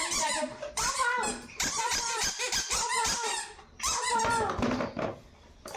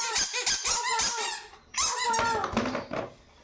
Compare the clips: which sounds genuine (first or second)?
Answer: second